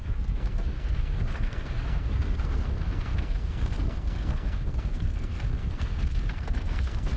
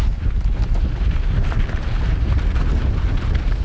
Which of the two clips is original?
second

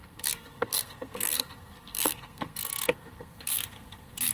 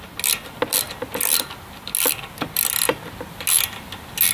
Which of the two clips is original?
second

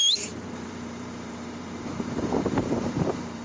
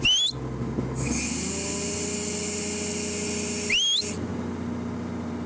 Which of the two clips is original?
second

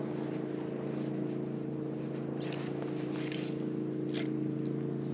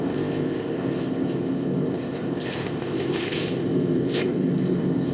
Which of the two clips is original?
first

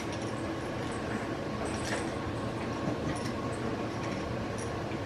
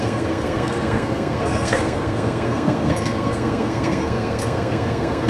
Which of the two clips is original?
first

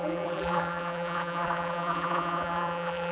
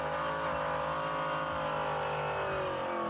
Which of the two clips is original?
second